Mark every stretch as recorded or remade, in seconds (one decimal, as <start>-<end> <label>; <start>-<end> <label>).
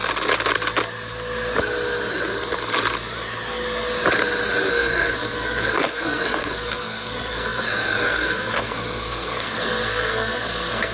0.0-4.7 recorded; 4.7-10.9 remade